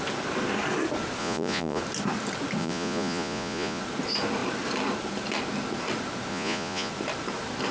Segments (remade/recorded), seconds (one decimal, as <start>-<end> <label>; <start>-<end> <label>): 0.0-1.2 recorded; 1.2-1.8 remade; 1.8-2.6 recorded; 2.6-3.8 remade; 3.8-6.3 recorded; 6.3-6.9 remade; 6.9-7.7 recorded